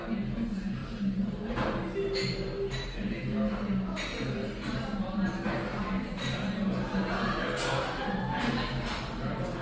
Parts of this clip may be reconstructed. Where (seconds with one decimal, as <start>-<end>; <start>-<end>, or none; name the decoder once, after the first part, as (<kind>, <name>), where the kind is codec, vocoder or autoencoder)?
0.8-1.4 (vocoder, BigVGAN v2); 4.4-5.3; 5.7-6.4